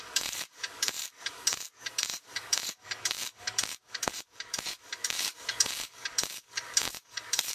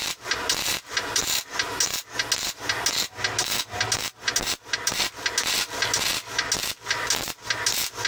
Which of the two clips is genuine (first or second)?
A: second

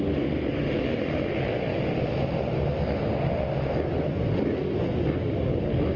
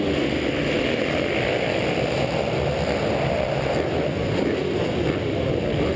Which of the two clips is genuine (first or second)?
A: first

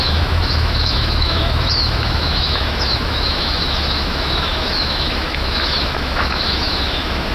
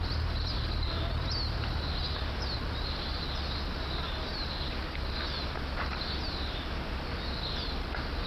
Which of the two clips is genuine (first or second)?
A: second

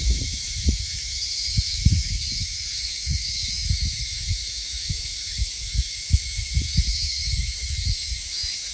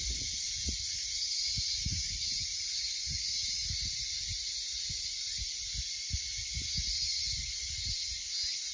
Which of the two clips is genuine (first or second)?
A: second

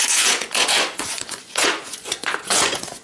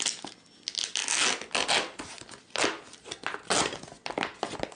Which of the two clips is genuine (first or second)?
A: second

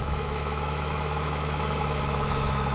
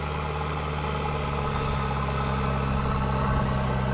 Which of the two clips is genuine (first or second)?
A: second